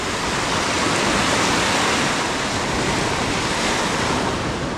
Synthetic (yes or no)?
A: no